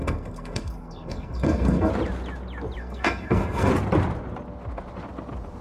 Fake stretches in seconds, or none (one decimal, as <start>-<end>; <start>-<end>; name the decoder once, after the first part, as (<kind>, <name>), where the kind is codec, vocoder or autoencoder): 0.0-1.9 (codec, SNAC); 2.8-3.7